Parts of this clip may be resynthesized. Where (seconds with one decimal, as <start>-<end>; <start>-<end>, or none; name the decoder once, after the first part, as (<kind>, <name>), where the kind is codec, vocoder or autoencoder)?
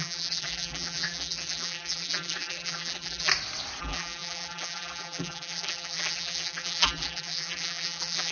0.0-3.3 (vocoder, BigVGAN v2); 3.8-8.3